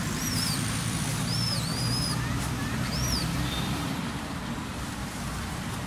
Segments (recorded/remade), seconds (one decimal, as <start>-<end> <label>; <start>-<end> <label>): 0.0-5.9 remade